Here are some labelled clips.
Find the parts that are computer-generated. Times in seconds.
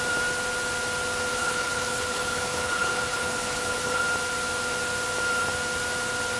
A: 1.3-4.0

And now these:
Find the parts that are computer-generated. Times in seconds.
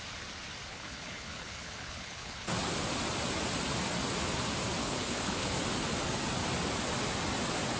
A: 0.7-2.5; 4.8-5.5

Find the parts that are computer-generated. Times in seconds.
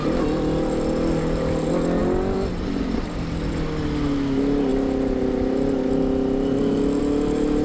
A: none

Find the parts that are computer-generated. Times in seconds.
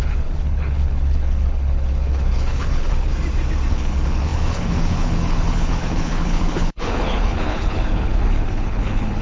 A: 0.0-3.1; 3.7-9.2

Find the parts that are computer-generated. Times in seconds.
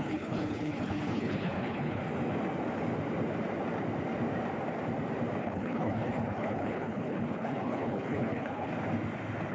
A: 0.0-2.0; 5.4-8.7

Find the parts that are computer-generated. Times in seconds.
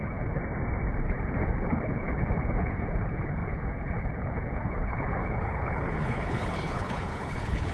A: 0.0-0.4; 0.9-7.7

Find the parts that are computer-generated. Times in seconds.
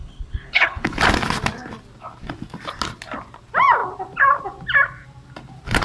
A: 0.0-1.0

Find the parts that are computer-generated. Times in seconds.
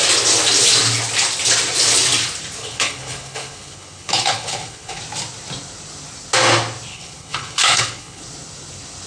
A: 2.6-5.0; 6.9-8.2